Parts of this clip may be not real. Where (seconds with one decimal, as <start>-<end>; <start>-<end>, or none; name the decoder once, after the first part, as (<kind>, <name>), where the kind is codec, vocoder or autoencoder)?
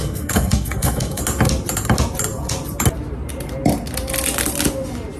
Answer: 0.0-1.2 (codec, SNAC)